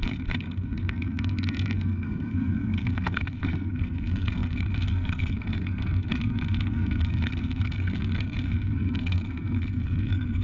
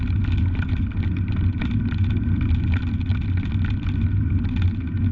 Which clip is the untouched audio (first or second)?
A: second